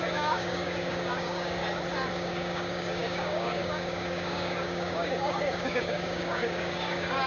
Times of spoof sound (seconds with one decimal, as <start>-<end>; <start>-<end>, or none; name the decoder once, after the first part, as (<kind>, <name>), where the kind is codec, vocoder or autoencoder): 0.0-1.6 (codec, DAC); 2.1-7.3